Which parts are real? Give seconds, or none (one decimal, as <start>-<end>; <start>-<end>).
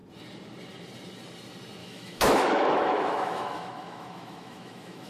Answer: 0.0-1.8